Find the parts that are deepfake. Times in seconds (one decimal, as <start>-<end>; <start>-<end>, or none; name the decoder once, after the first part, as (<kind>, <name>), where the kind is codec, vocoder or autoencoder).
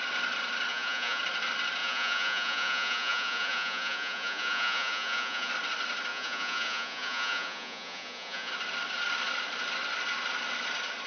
0.7-1.2 (vocoder, Vocos); 1.8-5.5; 6.1-8.5